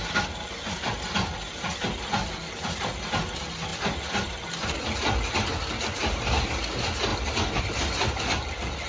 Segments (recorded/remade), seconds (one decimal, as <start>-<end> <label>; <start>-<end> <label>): 0.0-8.9 recorded